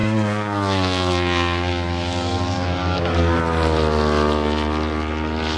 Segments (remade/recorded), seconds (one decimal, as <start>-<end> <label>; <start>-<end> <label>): 0.0-3.4 remade; 3.4-5.6 recorded